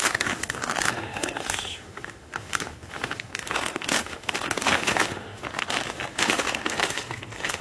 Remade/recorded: remade